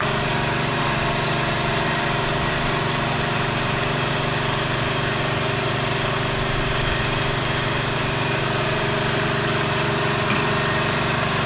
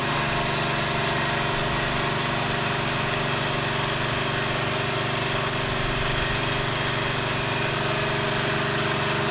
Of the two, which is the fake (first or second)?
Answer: first